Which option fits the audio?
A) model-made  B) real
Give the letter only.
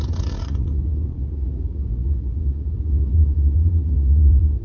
A